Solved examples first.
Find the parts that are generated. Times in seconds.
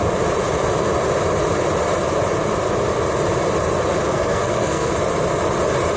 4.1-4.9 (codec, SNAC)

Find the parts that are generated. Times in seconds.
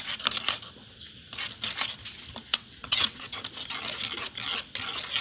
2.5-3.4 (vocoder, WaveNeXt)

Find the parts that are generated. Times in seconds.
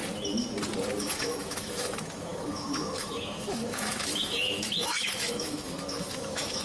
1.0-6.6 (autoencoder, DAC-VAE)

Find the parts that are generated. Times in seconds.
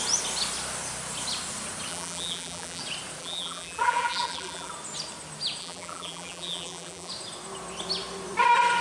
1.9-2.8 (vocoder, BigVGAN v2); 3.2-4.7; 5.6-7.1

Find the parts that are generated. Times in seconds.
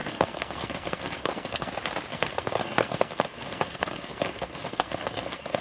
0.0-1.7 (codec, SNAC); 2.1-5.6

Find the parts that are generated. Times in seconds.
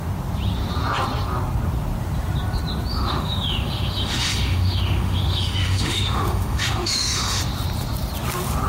2.9-7.4 (autoencoder, DAC-VAE)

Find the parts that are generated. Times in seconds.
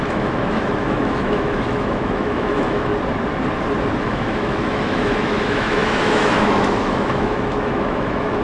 0.0-2.9 (autoencoder, DAC-VAE); 4.0-8.4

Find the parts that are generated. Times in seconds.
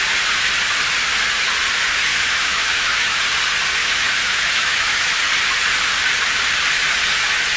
2.1-3.2 (autoencoder, DAC-VAE); 3.8-5.1